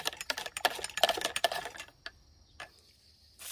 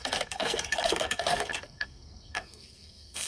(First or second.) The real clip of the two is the first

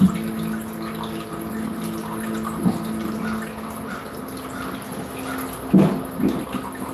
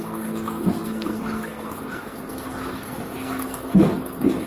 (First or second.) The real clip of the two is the first